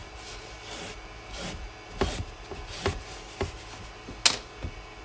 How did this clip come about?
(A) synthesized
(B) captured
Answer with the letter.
B